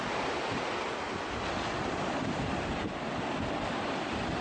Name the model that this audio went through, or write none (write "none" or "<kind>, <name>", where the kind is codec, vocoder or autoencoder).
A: none